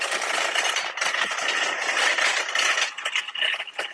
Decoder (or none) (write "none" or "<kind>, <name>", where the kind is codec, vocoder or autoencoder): none